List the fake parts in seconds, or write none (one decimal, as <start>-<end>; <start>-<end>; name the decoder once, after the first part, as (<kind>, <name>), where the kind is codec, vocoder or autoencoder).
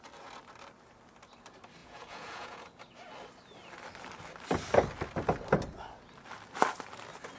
1.8-2.8 (vocoder, Vocos)